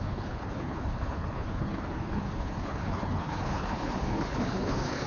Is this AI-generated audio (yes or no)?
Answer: yes